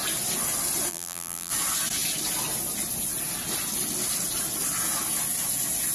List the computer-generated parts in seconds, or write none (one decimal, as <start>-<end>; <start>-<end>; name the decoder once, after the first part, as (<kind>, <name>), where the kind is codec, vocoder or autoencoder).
0.9-1.5 (vocoder, BigVGAN v2)